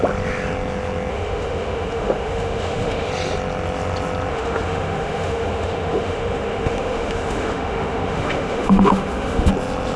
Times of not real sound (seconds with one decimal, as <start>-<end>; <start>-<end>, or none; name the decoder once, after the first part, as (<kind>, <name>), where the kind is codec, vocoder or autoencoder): 1.1-3.1 (autoencoder, DAC-VAE); 4.3-9.5